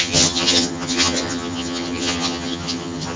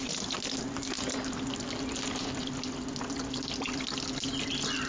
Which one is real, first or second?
second